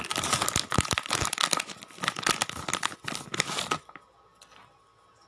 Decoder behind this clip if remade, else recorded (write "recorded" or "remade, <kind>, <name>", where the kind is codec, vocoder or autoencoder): recorded